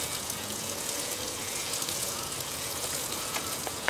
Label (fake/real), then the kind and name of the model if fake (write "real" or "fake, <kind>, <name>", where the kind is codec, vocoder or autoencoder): fake, vocoder, Vocos